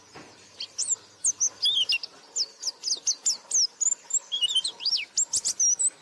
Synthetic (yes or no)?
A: no